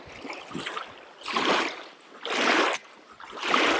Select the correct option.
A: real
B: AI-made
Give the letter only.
A